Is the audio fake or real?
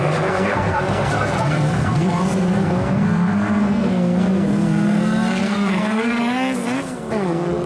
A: fake